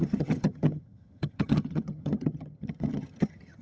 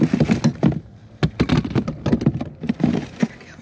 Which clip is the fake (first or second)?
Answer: first